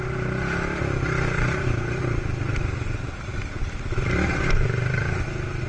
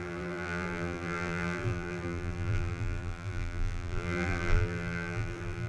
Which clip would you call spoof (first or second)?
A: second